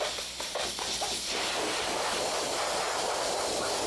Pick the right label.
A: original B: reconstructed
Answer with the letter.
B